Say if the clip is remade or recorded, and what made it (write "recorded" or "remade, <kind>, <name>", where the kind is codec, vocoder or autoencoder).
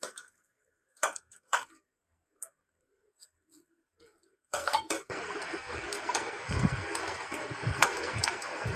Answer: remade, codec, SNAC